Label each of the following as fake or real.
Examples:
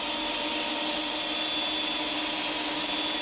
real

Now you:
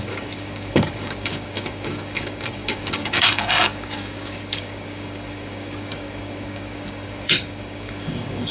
fake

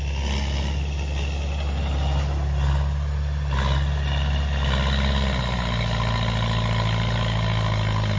real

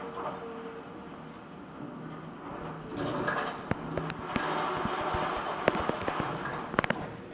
real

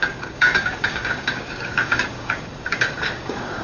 fake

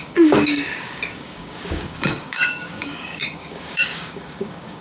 fake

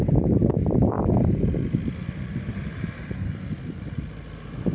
real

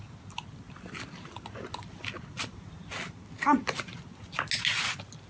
real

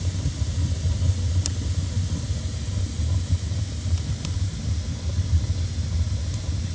real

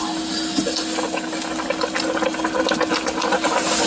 real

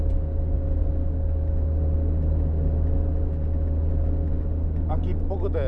real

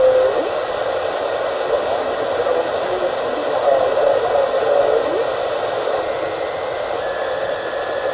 real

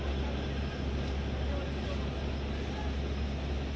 real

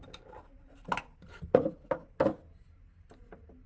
real